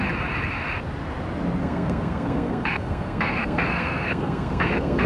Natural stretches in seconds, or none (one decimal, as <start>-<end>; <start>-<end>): 0.0-1.6